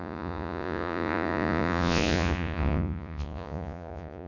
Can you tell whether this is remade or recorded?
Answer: remade